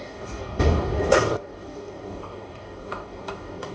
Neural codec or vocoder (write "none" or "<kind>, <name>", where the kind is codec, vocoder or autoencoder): codec, DAC